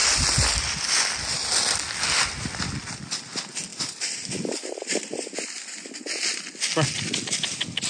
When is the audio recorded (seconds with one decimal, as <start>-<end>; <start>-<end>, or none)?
0.0-3.7; 6.7-7.9